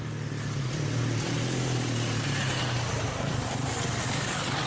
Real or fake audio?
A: real